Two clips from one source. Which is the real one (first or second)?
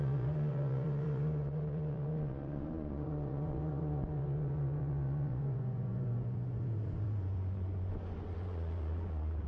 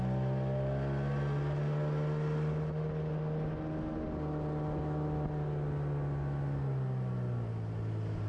second